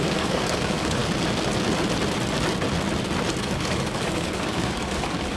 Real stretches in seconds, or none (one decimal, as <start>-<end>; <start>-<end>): 1.0-3.4